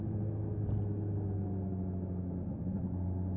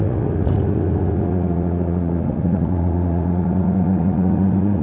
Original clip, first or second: first